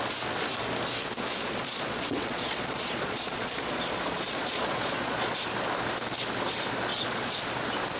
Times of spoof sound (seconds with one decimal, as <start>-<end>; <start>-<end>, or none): 1.3-5.4; 6.9-7.4